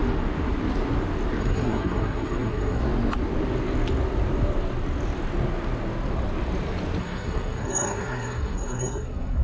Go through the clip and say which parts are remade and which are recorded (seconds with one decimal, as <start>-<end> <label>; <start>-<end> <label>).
0.0-1.4 recorded; 1.4-2.8 remade; 2.8-7.0 recorded; 7.0-9.4 remade